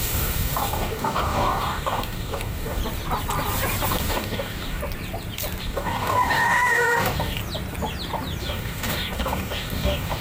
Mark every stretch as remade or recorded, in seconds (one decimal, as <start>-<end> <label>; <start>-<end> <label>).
0.0-2.8 remade; 2.8-3.9 recorded; 3.9-4.8 remade; 4.8-5.6 recorded; 5.6-7.4 remade; 7.4-8.4 recorded; 8.4-10.2 remade